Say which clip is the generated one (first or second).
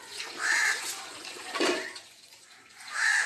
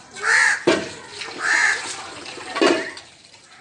first